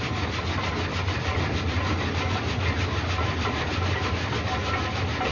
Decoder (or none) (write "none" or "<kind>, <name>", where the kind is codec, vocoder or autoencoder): none